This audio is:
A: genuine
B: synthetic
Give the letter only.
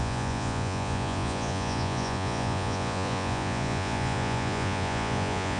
B